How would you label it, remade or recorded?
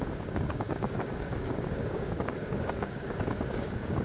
remade